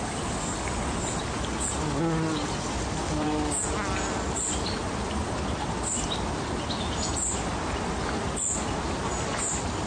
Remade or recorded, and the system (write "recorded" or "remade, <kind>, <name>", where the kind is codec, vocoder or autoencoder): recorded